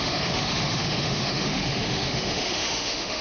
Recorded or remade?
remade